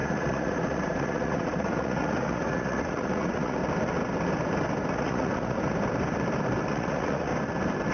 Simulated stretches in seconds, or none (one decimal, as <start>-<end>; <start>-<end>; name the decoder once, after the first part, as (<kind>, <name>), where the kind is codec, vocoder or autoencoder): 0.0-3.6 (vocoder, Vocos); 4.9-5.6; 6.7-7.3

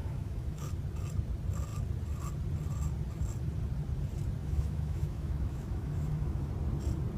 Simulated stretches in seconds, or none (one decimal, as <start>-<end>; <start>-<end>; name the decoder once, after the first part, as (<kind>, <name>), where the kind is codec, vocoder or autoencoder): 0.0-0.7 (autoencoder, DAC-VAE); 4.4-6.5

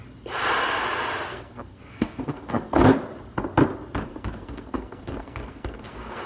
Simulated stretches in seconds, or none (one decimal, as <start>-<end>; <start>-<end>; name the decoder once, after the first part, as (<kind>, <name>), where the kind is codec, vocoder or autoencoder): 1.3-2.8 (codec, SNAC); 4.1-6.3

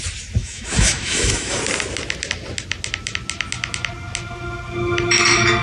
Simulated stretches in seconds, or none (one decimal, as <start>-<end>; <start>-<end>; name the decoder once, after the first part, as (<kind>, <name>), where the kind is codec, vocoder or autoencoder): 0.4-1.6 (autoencoder, DAC-VAE)

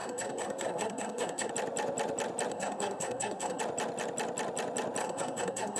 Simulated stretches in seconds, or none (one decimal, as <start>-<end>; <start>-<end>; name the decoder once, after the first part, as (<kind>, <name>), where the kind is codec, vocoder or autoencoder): 0.0-1.5 (codec, SNAC); 2.5-3.6; 5.0-5.8

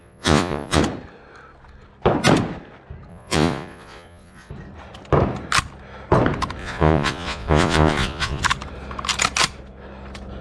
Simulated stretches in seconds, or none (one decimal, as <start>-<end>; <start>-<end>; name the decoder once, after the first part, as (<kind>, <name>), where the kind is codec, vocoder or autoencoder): 0.0-0.8 (vocoder, Vocos); 3.1-4.5; 6.6-8.4

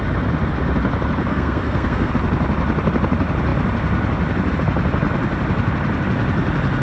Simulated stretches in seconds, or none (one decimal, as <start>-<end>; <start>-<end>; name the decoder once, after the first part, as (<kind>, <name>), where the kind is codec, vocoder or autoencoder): 1.3-2.1 (codec, SNAC)

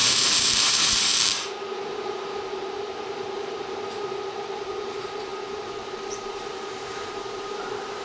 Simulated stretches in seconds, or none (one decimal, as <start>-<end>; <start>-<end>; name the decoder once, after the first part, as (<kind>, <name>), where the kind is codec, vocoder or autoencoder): 0.0-8.0 (vocoder, BigVGAN v2)